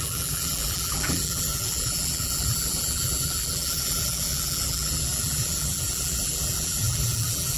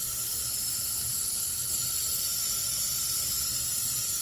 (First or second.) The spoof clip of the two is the first